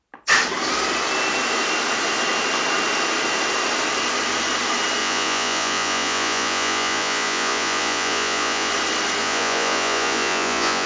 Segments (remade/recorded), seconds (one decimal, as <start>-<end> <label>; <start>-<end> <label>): 0.0-5.0 recorded; 5.0-8.7 remade; 8.7-9.2 recorded; 9.2-10.9 remade